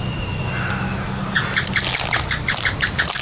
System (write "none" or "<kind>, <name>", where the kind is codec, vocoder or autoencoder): none